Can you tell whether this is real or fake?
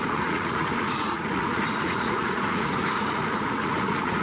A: fake